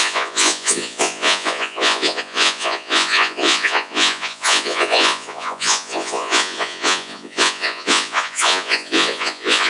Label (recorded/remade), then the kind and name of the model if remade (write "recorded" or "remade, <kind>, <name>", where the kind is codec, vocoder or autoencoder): remade, vocoder, Vocos